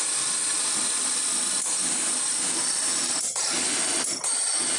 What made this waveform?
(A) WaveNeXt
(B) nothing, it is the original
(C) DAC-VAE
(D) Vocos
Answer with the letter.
B